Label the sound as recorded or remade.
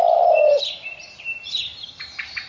remade